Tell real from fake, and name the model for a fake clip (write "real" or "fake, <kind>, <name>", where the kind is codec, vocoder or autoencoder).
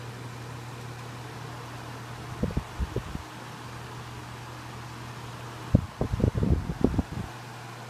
real